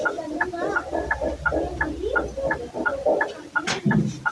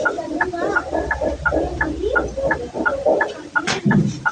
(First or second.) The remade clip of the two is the second